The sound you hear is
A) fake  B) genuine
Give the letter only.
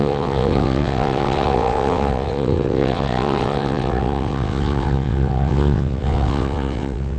A